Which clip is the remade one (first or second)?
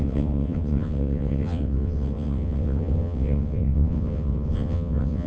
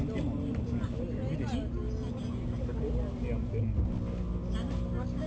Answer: first